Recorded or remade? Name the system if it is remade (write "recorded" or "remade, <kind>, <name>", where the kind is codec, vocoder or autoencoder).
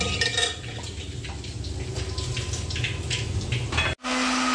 recorded